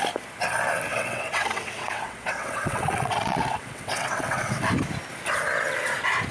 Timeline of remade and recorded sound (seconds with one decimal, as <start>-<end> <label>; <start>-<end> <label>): 0.0-0.9 recorded; 0.9-4.7 remade; 4.7-6.3 recorded